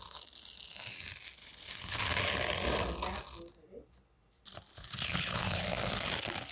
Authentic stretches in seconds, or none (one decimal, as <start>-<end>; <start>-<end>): 0.0-1.4; 2.0-4.7; 5.6-6.5